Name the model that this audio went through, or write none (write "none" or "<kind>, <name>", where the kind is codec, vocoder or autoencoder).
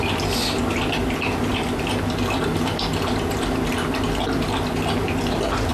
none